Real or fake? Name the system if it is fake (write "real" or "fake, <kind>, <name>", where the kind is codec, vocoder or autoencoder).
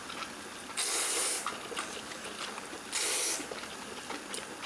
real